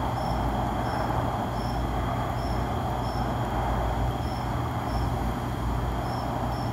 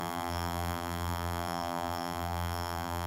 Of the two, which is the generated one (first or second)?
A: second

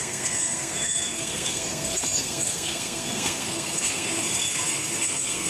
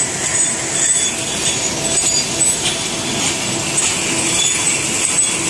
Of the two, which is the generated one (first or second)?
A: first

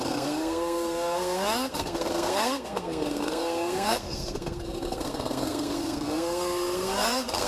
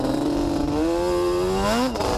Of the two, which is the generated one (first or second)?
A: first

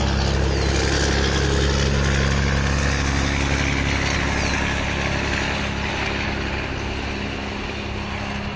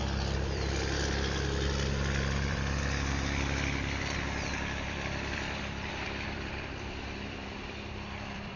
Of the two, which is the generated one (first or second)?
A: second